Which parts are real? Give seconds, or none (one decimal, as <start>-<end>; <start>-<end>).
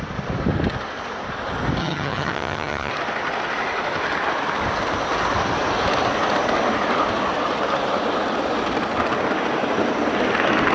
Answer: 0.0-1.8; 2.9-10.7